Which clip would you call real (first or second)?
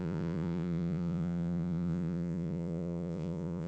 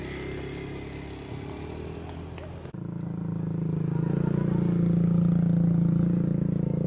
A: second